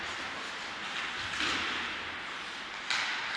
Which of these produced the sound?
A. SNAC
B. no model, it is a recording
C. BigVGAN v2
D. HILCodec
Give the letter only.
B